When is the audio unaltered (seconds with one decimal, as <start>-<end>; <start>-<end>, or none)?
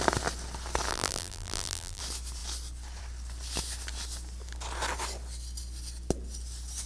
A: 0.0-0.9; 2.0-6.9